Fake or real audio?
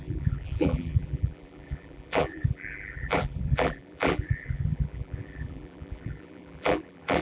fake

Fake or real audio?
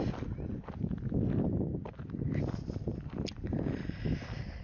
real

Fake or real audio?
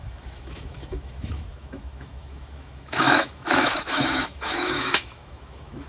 fake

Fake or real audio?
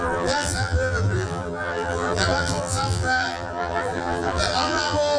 fake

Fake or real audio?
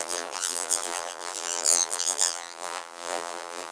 fake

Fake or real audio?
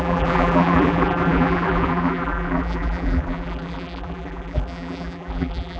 fake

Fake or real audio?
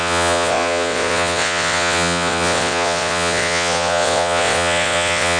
fake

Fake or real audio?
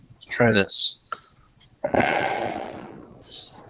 fake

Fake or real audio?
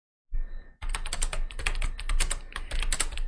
real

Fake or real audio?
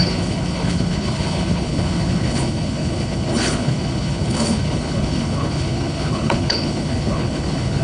fake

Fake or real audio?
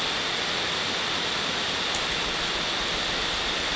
real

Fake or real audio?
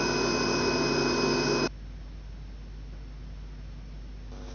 real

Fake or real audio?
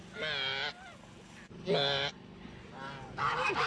real